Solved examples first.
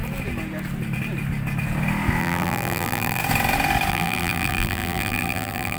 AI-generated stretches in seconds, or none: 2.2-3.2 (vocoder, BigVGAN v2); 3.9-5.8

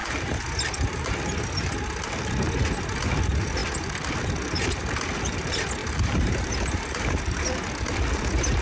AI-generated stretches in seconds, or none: 0.0-1.1 (vocoder, BigVGAN v2); 5.8-7.2

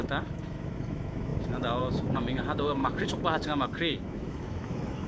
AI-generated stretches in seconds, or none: 0.0-5.1 (autoencoder, DAC-VAE)

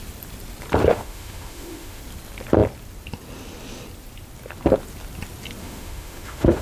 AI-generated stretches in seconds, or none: 0.8-2.0 (autoencoder, DAC-VAE); 5.6-6.6